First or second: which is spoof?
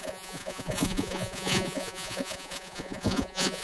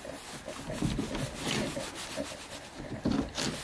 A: first